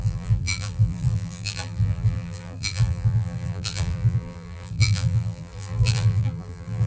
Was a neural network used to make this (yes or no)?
yes